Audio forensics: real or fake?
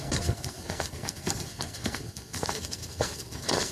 fake